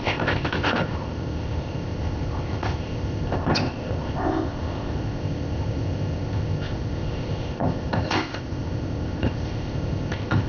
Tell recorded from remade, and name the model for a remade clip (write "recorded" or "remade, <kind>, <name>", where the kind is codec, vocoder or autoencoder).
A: remade, codec, ZipCodec